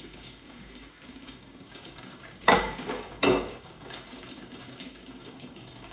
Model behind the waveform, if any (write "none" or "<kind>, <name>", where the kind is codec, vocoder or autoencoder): codec, DAC